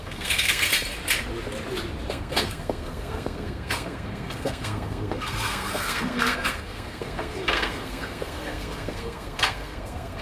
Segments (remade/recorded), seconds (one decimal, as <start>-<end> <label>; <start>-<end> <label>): 0.0-0.7 remade; 0.7-2.1 recorded; 2.1-10.2 remade

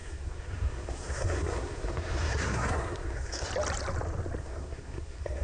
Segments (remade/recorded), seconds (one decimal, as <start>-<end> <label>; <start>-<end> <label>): 0.0-3.5 remade; 3.5-4.4 recorded; 4.4-5.4 remade

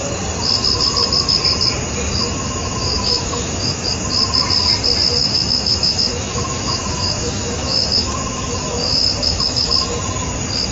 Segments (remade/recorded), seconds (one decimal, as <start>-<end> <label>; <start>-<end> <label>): 0.0-2.6 recorded; 2.6-3.9 remade; 3.9-5.2 recorded; 5.2-9.7 remade; 9.7-10.7 recorded

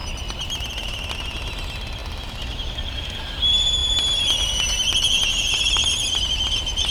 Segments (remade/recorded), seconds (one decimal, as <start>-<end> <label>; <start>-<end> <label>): 0.0-0.7 recorded; 0.7-6.9 remade

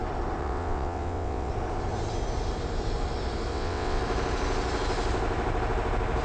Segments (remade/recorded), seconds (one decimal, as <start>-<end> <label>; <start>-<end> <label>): 0.0-0.4 recorded; 0.4-1.5 remade; 1.5-3.5 recorded; 3.5-4.0 remade; 4.0-6.2 recorded

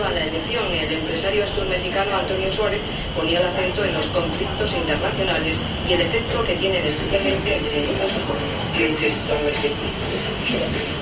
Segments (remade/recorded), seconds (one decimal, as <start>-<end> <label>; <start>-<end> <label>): 0.0-6.9 recorded; 6.9-11.0 remade